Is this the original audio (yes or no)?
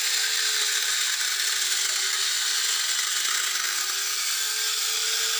yes